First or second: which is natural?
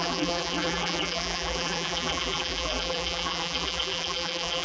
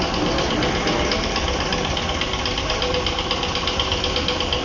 second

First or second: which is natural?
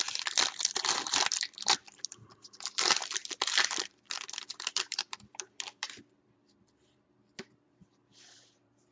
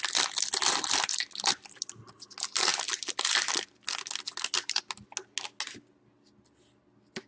second